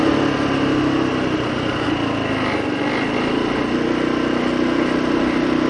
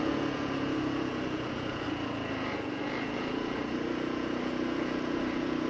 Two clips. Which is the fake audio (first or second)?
second